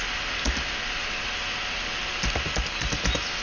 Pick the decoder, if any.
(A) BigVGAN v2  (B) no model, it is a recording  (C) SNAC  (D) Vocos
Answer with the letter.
B